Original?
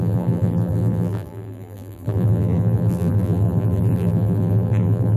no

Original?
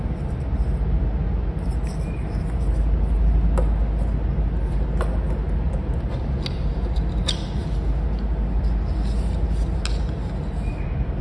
yes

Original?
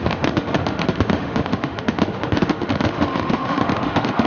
no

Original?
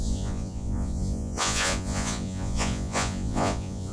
no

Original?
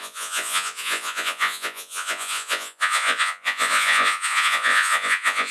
no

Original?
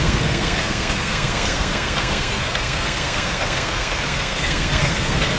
no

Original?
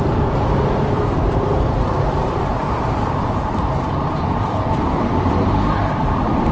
no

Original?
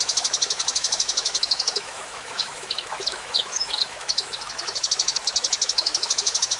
no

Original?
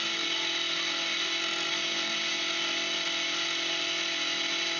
yes